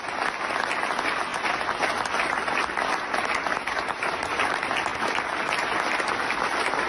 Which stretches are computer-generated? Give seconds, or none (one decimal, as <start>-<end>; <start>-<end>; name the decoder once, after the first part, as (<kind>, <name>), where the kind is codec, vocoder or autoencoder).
1.3-1.9 (vocoder, BigVGAN v2); 3.6-4.4